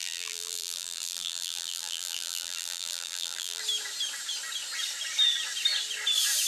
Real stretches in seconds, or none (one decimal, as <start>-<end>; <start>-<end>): 3.6-6.5